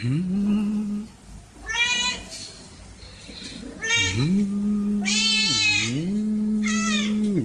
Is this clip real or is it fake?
real